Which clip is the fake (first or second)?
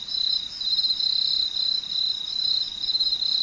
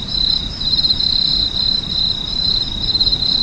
second